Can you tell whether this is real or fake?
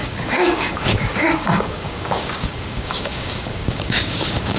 fake